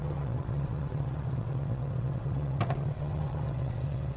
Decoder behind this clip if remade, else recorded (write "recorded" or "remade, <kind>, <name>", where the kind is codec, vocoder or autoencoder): remade, vocoder, WaveNeXt